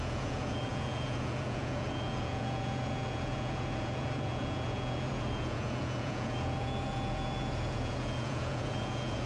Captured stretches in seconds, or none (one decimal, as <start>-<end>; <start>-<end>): none